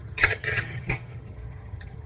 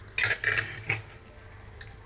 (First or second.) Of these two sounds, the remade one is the first